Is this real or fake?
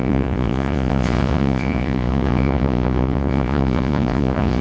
fake